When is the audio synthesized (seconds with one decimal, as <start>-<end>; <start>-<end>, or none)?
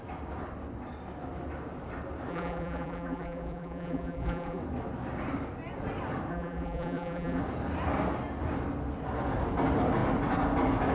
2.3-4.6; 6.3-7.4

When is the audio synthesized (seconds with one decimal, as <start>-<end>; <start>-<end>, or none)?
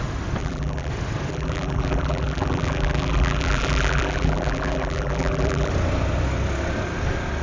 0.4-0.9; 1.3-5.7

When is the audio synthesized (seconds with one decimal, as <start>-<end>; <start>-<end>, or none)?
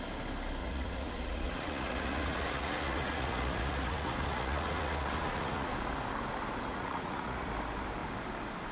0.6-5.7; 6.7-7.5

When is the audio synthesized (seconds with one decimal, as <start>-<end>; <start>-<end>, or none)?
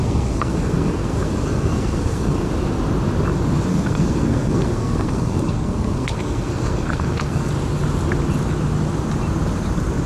0.0-2.5; 3.7-7.5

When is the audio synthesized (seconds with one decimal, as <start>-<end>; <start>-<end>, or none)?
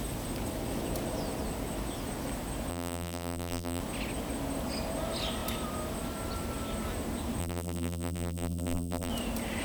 2.7-3.8; 7.4-9.1